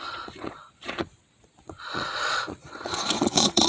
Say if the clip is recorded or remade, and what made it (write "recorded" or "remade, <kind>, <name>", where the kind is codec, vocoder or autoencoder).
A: remade, vocoder, Vocos